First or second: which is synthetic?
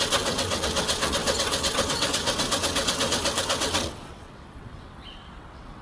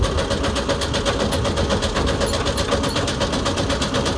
first